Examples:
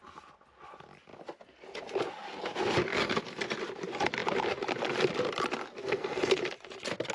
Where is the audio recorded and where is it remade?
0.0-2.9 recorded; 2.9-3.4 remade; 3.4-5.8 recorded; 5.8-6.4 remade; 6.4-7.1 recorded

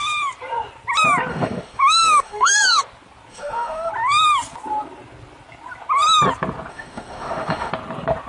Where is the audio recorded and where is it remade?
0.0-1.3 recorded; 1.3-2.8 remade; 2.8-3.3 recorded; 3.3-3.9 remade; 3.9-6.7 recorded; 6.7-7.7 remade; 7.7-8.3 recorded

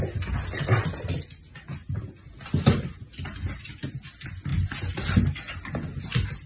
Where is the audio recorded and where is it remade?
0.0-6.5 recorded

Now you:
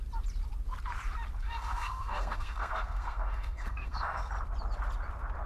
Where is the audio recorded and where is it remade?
0.0-1.4 recorded; 1.4-4.3 remade; 4.3-5.5 recorded

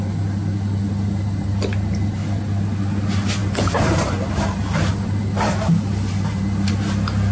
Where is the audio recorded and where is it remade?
0.0-3.4 recorded; 3.4-6.7 remade; 6.7-7.3 recorded